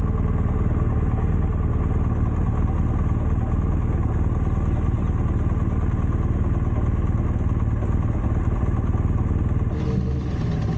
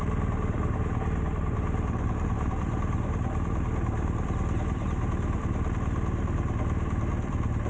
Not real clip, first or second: second